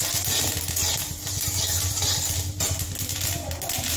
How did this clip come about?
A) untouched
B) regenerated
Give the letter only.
A